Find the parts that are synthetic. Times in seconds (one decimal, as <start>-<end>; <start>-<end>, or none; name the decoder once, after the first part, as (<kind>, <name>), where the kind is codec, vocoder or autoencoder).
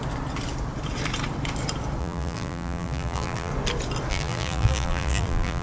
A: 2.0-3.5 (vocoder, BigVGAN v2); 4.1-5.6